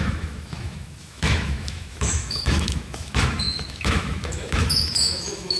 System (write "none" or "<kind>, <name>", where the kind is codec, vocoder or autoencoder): autoencoder, DAC-VAE